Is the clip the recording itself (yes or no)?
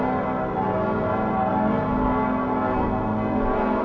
yes